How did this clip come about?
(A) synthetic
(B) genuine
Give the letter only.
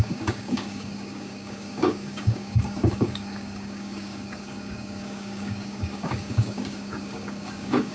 A